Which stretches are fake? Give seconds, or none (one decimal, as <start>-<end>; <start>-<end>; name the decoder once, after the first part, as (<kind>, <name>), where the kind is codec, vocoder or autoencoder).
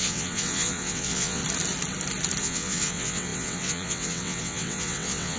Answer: 0.0-1.4 (vocoder, WaveNeXt); 2.4-5.4